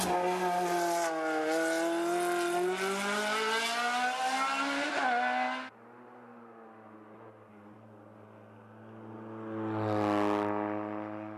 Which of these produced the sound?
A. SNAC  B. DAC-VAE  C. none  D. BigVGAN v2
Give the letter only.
C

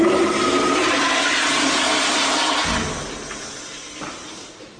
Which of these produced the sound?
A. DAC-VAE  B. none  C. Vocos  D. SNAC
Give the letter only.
B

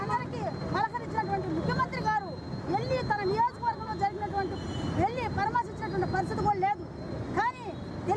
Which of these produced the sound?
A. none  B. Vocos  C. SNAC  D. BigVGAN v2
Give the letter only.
A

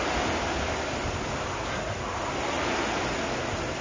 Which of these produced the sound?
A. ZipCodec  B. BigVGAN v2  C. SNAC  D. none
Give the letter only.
D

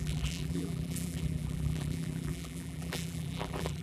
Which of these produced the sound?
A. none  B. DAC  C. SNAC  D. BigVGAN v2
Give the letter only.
D